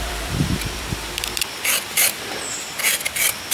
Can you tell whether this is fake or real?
fake